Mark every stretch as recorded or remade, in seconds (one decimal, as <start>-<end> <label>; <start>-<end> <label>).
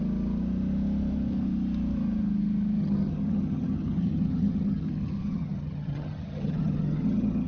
0.0-2.8 recorded; 2.8-7.5 remade